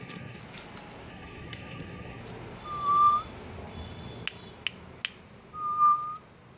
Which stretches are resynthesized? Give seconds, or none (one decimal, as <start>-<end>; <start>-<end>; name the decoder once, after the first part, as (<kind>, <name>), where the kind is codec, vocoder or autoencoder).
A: 0.0-0.4 (codec, SNAC); 1.1-2.2